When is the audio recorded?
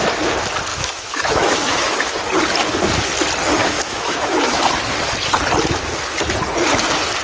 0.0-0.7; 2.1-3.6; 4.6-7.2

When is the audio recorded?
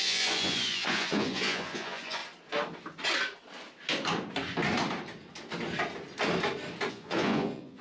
2.2-6.9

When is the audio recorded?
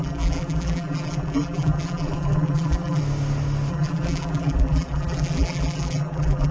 3.0-3.7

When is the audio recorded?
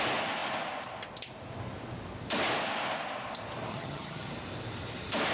0.0-3.7; 4.3-5.3